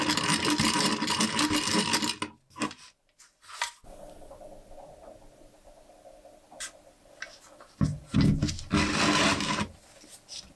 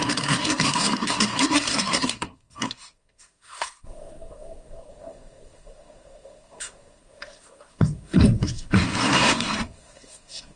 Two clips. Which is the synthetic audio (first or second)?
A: second